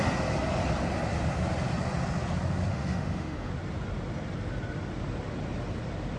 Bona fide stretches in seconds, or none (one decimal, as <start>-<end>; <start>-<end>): 0.0-2.7; 3.5-6.2